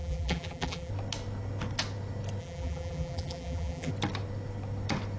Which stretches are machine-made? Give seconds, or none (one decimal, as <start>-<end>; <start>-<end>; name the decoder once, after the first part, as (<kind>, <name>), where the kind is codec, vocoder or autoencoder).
0.0-0.9 (vocoder, BigVGAN v2); 2.4-3.9

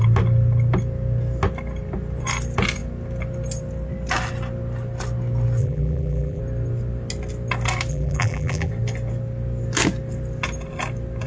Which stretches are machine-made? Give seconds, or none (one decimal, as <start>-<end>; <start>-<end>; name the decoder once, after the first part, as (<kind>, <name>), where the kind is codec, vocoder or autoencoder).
5.6-6.4 (vocoder, BigVGAN v2); 7.9-8.7

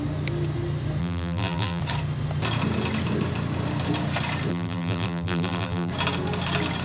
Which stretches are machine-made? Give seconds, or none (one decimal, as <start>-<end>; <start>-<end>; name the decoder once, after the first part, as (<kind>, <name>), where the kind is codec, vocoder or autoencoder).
1.0-1.8 (vocoder, BigVGAN v2); 4.5-5.9

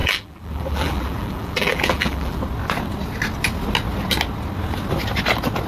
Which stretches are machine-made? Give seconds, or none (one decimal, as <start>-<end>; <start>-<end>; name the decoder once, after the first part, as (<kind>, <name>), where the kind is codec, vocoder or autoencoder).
0.0-2.4 (vocoder, BigVGAN v2)

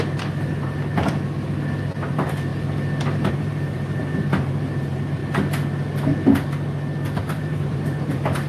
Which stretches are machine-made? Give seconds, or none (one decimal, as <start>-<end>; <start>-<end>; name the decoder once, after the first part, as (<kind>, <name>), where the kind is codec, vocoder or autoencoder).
0.0-0.9 (vocoder, BigVGAN v2); 2.1-2.5; 3.3-5.2; 7.2-8.5

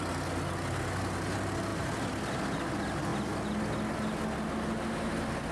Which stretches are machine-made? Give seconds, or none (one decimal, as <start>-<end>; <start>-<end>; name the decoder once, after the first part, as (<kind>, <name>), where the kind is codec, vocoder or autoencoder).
1.7-2.4 (vocoder, BigVGAN v2)

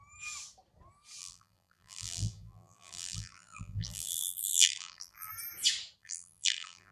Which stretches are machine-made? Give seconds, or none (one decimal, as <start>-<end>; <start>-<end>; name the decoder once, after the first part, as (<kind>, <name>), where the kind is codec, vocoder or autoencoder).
1.2-5.3 (vocoder, BigVGAN v2); 6.0-6.9